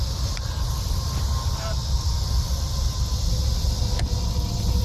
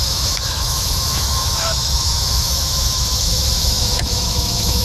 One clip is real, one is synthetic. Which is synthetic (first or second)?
second